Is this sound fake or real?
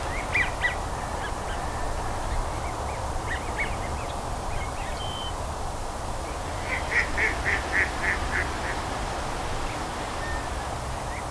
real